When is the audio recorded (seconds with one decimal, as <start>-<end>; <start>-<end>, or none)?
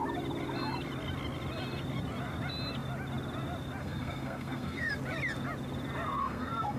0.0-3.8; 4.9-6.2